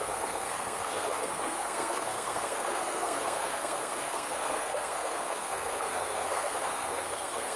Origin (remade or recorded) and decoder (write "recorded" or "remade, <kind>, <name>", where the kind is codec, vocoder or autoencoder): remade, codec, SNAC